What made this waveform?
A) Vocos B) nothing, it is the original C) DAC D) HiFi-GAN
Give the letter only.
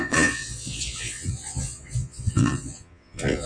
A